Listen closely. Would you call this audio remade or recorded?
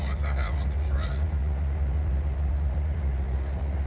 remade